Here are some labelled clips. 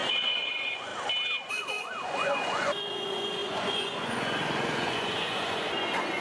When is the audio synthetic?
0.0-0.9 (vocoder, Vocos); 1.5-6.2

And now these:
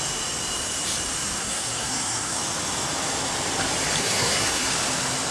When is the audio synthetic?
1.4-2.4 (codec, SNAC); 4.0-4.7

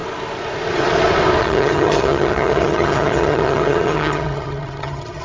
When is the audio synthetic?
1.4-5.2 (vocoder, HiFi-GAN)

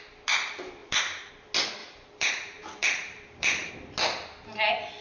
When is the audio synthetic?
0.8-1.3 (vocoder, BigVGAN v2); 1.8-3.7

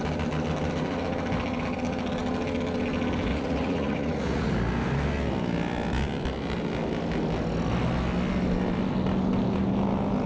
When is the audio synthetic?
3.3-4.5 (vocoder, Vocos)